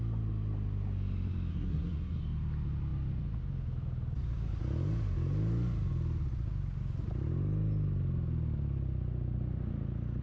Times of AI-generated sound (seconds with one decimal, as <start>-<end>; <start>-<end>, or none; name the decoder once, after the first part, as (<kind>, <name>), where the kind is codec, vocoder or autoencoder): 1.5-2.2 (codec, SNAC)